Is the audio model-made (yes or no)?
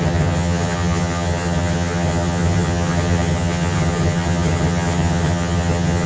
yes